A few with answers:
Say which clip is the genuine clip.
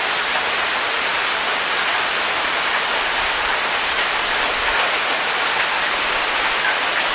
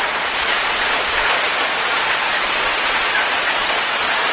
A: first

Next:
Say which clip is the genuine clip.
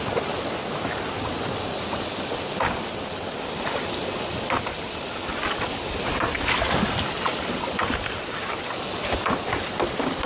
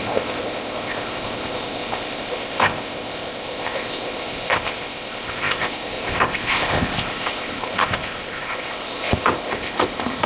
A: first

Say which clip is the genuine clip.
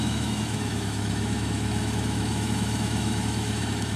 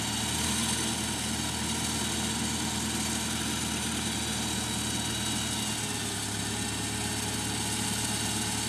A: second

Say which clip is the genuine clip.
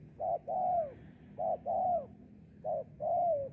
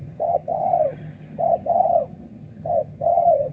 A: first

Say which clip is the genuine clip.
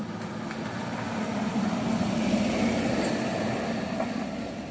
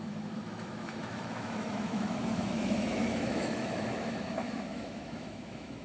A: first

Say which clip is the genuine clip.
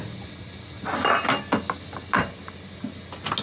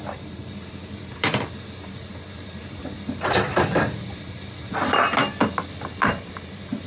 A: first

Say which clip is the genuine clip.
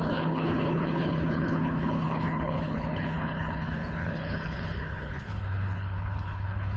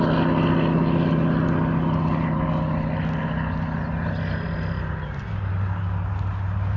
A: second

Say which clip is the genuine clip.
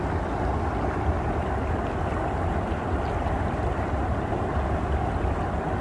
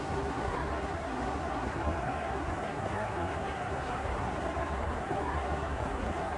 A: first